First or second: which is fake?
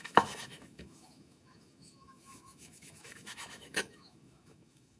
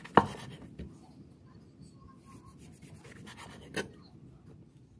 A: first